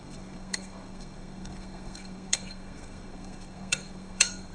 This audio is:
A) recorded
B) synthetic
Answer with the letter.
B